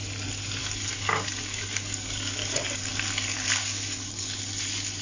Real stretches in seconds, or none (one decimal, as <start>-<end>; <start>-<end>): 0.0-0.6; 2.9-3.3; 4.4-5.0